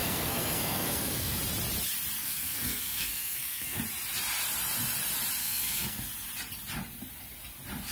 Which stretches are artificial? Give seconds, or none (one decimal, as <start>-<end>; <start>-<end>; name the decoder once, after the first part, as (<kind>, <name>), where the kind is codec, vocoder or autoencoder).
0.0-1.4 (codec, SNAC); 2.2-3.8; 5.4-6.0